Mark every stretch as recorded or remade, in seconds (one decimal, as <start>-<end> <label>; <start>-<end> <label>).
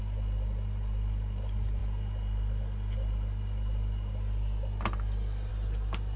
0.0-6.2 recorded